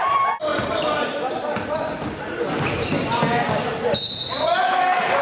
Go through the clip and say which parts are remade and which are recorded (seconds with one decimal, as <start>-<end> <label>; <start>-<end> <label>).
0.0-0.5 recorded; 0.5-3.0 remade; 3.0-5.2 recorded